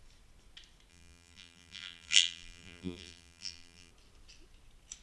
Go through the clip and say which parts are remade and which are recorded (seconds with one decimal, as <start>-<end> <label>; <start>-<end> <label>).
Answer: 0.0-0.9 recorded; 0.9-3.9 remade; 3.9-5.0 recorded